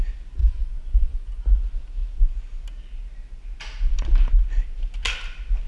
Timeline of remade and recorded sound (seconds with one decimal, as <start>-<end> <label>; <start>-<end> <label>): 0.0-0.4 recorded; 0.4-1.4 remade; 1.4-5.7 recorded